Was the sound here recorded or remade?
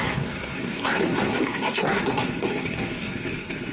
remade